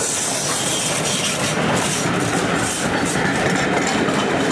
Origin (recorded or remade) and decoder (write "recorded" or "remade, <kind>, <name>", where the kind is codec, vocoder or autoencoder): recorded